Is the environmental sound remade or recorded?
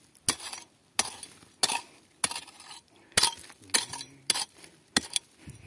recorded